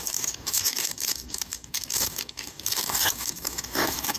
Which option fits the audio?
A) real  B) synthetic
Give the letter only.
B